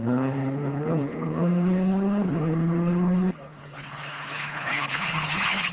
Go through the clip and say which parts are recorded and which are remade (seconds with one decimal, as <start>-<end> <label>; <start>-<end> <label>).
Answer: 0.0-5.7 remade